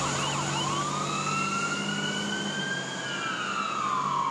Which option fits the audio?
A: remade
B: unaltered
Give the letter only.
B